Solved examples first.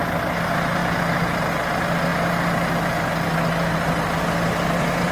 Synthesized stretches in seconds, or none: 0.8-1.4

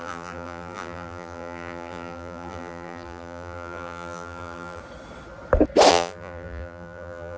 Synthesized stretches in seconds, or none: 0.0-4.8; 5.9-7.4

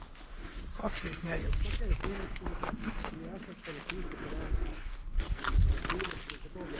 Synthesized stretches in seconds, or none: 0.8-1.4; 2.0-3.1; 4.7-5.4

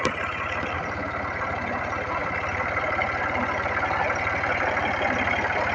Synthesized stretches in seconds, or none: 2.2-2.8

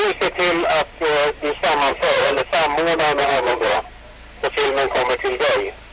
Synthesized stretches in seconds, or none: 1.9-2.4; 3.2-3.8

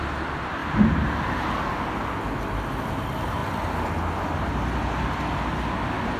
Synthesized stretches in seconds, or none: 0.6-1.7

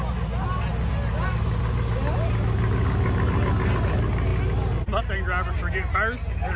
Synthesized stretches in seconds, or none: none